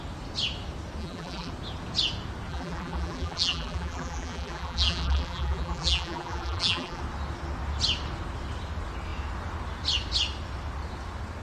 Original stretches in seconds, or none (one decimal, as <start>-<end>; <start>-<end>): 0.0-1.0; 1.5-2.5; 7.0-11.4